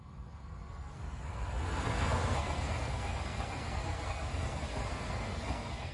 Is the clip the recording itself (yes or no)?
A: no